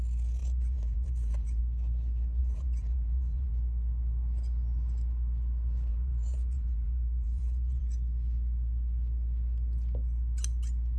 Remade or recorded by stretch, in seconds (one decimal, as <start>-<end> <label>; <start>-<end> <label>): 0.0-0.4 recorded; 0.4-1.6 remade; 1.6-2.4 recorded; 2.4-3.5 remade; 3.5-5.9 recorded; 5.9-7.8 remade; 7.8-11.0 recorded